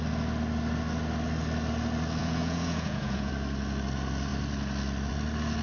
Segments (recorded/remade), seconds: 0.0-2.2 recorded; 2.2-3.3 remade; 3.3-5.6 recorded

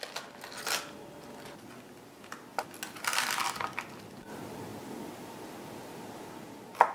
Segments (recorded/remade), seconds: 0.0-6.9 recorded